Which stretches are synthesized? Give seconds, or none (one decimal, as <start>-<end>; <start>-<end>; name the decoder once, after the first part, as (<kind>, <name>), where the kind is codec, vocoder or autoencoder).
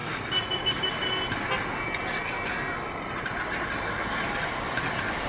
none